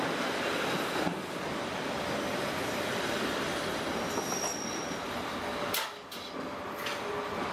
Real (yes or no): yes